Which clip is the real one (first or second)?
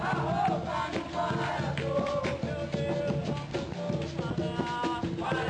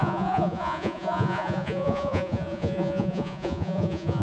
first